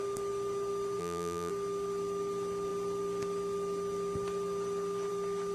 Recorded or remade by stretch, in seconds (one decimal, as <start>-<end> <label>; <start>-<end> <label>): 0.0-1.0 recorded; 1.0-1.5 remade; 1.5-5.5 recorded